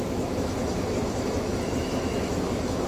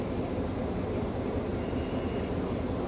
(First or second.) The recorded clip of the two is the second